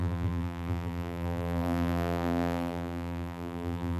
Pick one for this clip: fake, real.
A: fake